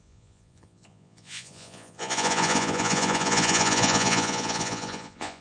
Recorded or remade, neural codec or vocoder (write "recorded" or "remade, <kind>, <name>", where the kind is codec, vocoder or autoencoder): remade, vocoder, Vocos